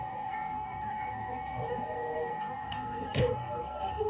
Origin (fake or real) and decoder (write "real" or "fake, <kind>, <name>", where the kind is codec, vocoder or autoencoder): fake, codec, SNAC